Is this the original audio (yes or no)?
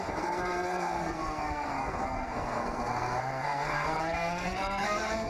no